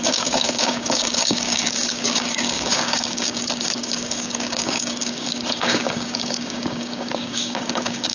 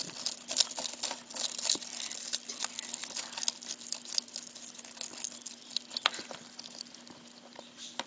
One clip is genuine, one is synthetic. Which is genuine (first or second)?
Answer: second